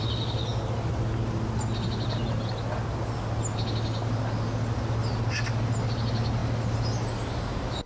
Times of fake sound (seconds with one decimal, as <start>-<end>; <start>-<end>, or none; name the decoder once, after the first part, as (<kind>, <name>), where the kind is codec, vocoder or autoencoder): none